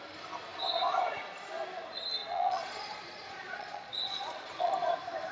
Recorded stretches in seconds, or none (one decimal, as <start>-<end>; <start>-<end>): 0.0-2.2; 4.7-5.3